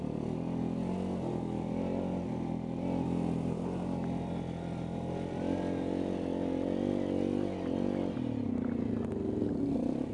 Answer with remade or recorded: recorded